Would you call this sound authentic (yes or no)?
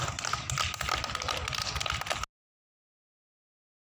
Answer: yes